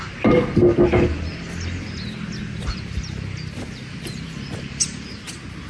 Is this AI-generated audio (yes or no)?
no